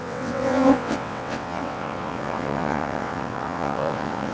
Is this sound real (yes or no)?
no